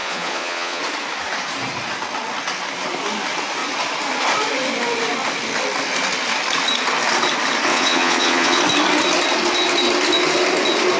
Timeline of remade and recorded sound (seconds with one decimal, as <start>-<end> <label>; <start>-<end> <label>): 0.0-0.8 remade; 0.8-7.7 recorded; 7.7-8.6 remade; 8.6-11.0 recorded